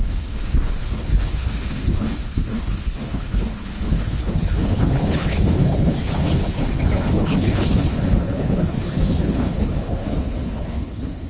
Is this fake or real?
fake